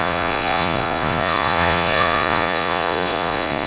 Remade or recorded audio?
remade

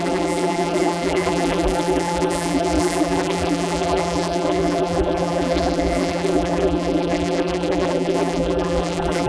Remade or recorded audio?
remade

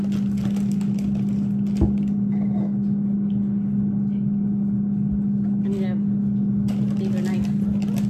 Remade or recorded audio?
recorded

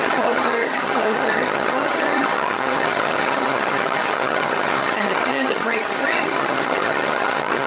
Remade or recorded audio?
remade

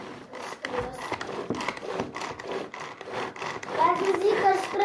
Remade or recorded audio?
recorded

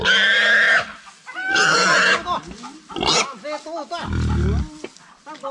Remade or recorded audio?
recorded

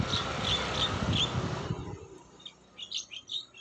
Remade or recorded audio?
recorded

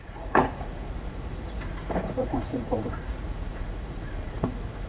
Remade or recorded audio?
remade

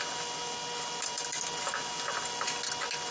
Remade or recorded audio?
recorded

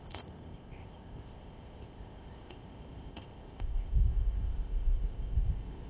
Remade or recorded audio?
remade